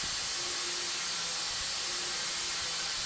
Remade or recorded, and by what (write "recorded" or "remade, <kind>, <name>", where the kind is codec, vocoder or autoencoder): recorded